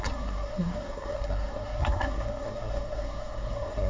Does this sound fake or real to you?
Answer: fake